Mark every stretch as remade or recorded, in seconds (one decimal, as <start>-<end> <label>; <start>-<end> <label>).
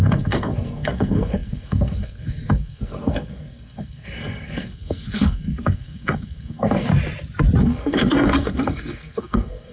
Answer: 0.0-6.9 remade; 6.9-7.6 recorded; 7.6-9.7 remade